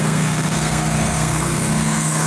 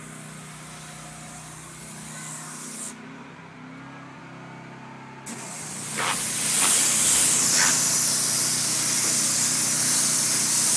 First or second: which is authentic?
second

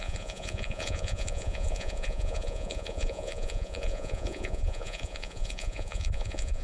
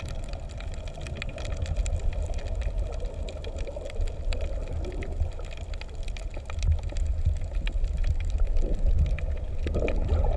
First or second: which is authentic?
second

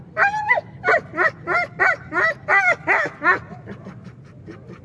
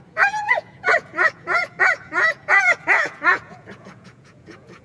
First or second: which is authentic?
first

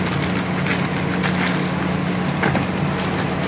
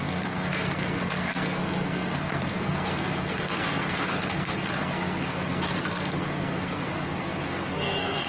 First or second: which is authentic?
first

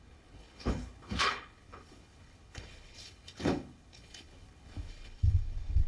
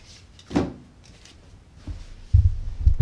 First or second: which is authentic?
second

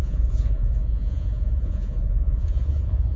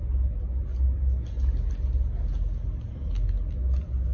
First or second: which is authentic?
second